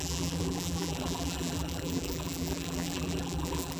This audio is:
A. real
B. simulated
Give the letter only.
B